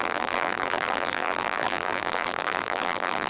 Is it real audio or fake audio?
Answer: fake